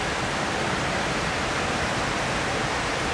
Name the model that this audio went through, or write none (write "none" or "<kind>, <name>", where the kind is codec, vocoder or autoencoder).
vocoder, BigVGAN v2